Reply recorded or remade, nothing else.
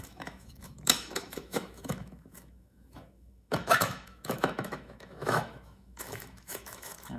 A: remade